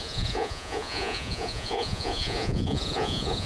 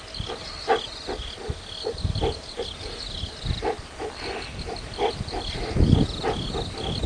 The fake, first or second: first